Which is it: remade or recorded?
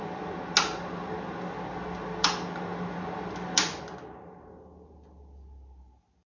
recorded